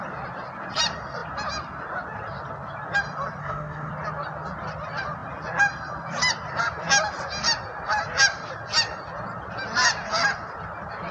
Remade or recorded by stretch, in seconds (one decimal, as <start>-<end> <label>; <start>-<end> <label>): 0.0-3.4 recorded; 3.4-3.9 remade; 3.9-11.1 recorded